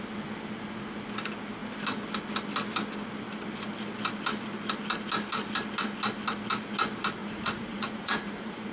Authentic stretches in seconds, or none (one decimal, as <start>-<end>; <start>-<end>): 0.0-7.2